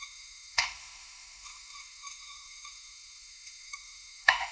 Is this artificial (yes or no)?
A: yes